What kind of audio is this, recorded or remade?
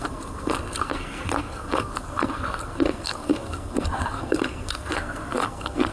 remade